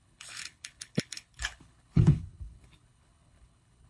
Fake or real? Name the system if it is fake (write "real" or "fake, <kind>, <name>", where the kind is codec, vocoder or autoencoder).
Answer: fake, codec, HILCodec